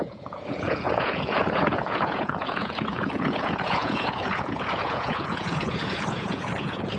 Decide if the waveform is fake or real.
fake